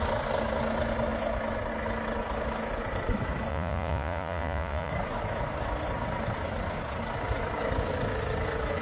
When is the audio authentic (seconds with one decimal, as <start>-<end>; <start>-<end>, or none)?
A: 0.0-3.5; 4.9-8.8